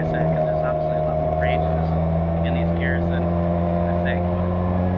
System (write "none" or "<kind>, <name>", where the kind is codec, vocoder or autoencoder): none